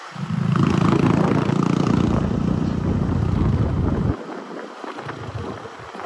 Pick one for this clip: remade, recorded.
recorded